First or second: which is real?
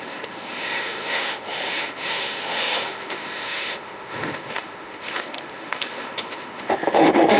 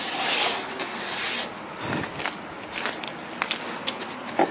second